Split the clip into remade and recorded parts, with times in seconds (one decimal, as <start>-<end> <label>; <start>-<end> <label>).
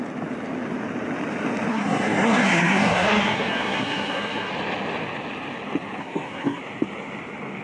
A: 0.0-1.7 recorded; 1.7-4.5 remade; 4.5-6.0 recorded; 6.0-6.6 remade; 6.6-7.6 recorded